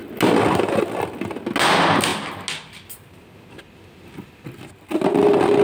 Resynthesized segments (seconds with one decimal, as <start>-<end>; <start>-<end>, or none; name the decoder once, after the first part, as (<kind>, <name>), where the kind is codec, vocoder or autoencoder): none